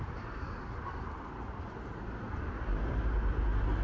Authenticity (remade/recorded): recorded